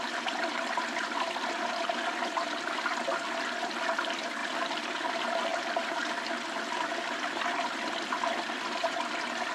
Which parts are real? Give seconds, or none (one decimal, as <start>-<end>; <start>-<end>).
0.0-4.4; 5.1-5.5; 9.1-9.5